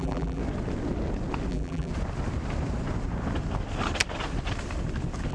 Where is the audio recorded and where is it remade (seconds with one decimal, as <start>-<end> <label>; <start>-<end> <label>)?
0.0-0.4 remade; 0.4-1.5 recorded; 1.5-1.9 remade; 1.9-5.3 recorded